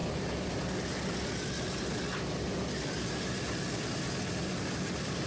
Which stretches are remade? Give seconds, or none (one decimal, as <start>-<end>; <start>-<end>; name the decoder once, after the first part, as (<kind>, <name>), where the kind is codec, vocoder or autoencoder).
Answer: none